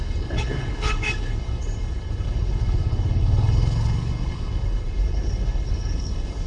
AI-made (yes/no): yes